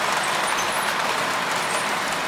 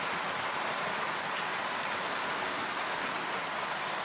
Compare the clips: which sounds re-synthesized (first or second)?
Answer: first